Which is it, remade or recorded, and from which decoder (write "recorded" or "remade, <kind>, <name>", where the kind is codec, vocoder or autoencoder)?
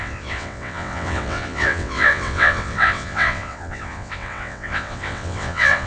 remade, vocoder, WaveNeXt